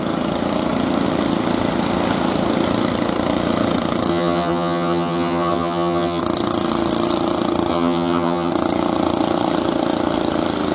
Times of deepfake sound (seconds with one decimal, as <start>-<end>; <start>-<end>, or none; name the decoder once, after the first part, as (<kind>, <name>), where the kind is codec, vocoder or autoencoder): 4.1-6.2 (vocoder, HiFi-GAN); 7.7-8.5